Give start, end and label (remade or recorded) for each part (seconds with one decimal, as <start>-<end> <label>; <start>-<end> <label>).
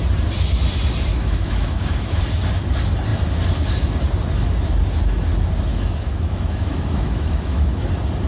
0.0-1.1 recorded; 1.1-2.2 remade; 2.2-5.7 recorded; 5.7-7.9 remade; 7.9-8.3 recorded